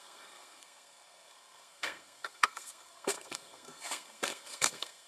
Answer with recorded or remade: remade